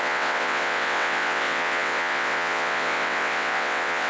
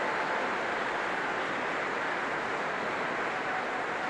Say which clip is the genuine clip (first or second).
second